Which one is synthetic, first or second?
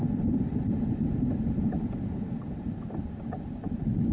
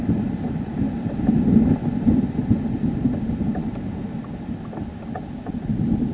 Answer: first